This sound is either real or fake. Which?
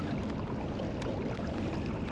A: real